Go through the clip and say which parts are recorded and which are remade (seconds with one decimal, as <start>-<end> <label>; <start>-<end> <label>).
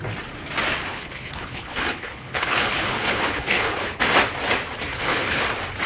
0.0-0.9 recorded; 0.9-4.0 remade; 4.0-4.9 recorded; 4.9-5.4 remade; 5.4-5.9 recorded